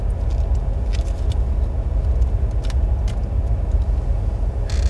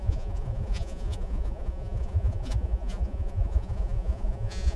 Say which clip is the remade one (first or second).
second